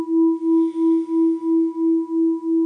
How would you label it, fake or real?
real